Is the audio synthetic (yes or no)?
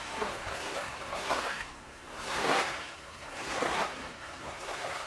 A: yes